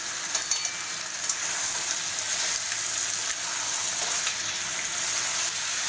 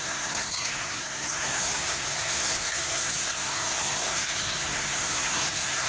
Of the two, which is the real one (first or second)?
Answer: first